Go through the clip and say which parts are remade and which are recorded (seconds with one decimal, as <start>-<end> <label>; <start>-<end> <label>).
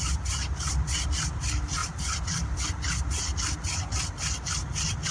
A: 0.0-5.1 recorded